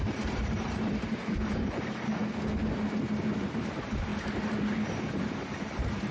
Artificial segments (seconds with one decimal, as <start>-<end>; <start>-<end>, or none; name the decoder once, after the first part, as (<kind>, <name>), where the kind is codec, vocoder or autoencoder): 0.0-2.2 (vocoder, BigVGAN v2); 3.4-4.1; 5.0-6.1